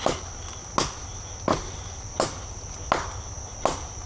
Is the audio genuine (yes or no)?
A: yes